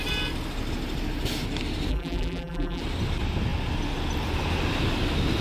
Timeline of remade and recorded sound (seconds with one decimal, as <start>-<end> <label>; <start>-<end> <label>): 0.0-1.9 recorded; 1.9-2.8 remade; 2.8-5.4 recorded